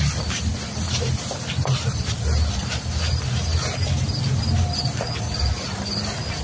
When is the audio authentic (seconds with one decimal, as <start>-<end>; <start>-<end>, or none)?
0.0-6.4